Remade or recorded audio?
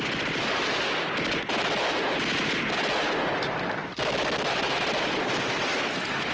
recorded